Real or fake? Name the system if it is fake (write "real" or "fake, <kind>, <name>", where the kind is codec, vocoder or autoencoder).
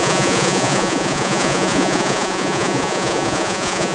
fake, vocoder, Vocos